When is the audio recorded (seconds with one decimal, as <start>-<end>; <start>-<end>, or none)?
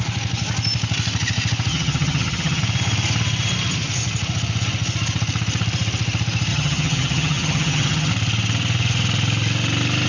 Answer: 0.0-1.7; 2.6-6.5; 8.1-10.1